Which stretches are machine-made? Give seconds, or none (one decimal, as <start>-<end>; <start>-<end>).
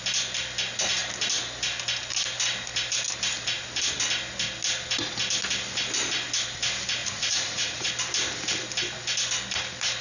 7.0-7.9